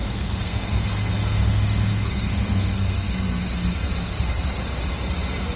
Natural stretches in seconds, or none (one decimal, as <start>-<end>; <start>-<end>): 3.4-5.6